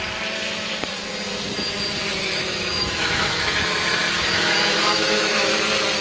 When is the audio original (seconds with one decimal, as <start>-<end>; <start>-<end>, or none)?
0.0-2.1; 5.5-6.0